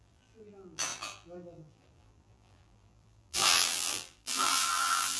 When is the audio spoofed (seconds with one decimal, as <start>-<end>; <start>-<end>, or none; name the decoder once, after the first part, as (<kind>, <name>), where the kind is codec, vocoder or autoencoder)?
0.0-5.2 (vocoder, BigVGAN v2)